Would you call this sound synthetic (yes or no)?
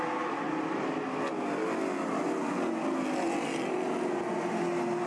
no